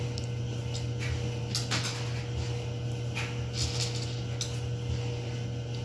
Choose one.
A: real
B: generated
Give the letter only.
A